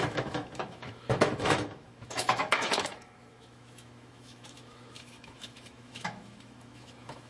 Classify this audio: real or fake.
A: fake